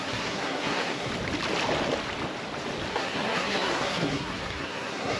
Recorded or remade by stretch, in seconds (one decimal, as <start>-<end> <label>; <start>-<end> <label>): 0.0-1.1 remade; 1.1-2.9 recorded; 2.9-5.2 remade